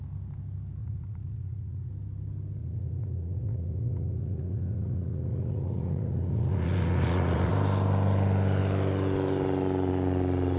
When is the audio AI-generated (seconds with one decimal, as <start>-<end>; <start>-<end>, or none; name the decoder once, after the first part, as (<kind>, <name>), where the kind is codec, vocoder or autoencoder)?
0.8-1.9 (vocoder, Vocos); 2.6-7.5